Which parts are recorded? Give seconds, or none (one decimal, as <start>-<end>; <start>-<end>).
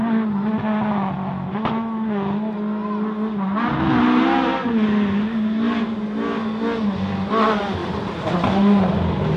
0.0-7.8; 8.9-9.4